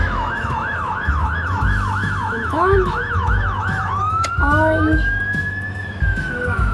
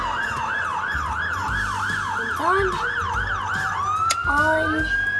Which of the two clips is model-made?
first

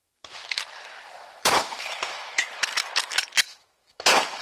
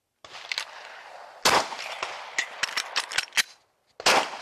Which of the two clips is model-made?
first